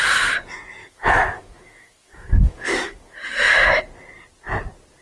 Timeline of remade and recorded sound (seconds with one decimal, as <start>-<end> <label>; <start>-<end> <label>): 0.0-0.8 recorded; 0.8-3.8 remade; 3.8-5.0 recorded